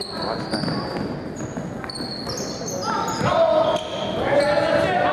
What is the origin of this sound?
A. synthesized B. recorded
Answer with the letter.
B